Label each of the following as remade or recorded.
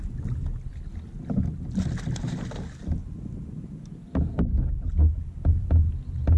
recorded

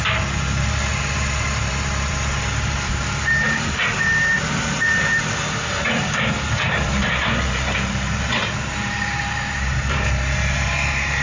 remade